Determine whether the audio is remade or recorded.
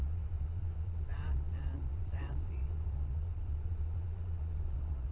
remade